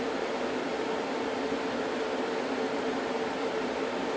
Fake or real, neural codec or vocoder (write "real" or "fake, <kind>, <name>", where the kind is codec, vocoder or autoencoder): real